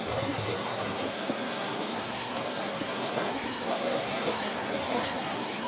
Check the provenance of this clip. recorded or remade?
remade